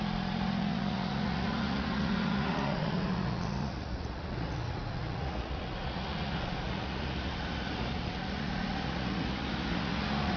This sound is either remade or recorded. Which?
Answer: remade